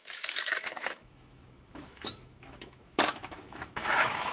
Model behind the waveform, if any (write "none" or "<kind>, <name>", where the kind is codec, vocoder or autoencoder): autoencoder, DAC-VAE